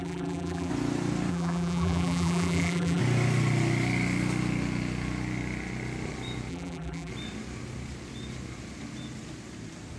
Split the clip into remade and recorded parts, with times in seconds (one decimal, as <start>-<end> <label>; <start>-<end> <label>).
0.0-0.7 remade; 0.7-1.3 recorded; 1.3-3.0 remade; 3.0-6.5 recorded; 6.5-7.1 remade; 7.1-10.0 recorded